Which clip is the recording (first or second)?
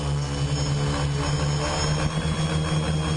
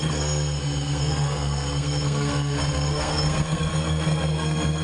first